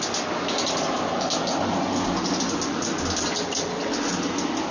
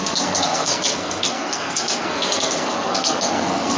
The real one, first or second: first